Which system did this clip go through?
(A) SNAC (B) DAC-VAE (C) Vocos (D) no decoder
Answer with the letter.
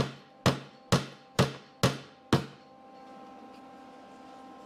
D